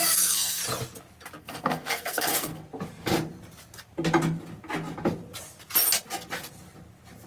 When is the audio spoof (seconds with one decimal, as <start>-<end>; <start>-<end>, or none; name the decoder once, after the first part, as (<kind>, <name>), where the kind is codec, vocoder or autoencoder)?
0.0-0.6 (codec, SNAC); 1.4-2.6